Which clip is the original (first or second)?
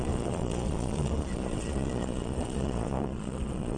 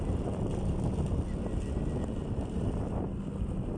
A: second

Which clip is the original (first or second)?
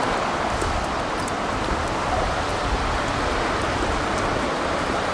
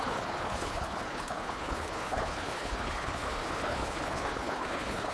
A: first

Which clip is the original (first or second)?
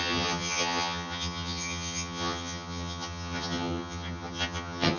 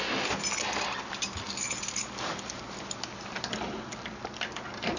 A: second